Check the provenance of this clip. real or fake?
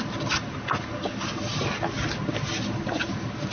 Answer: real